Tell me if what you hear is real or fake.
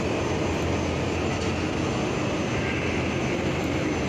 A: real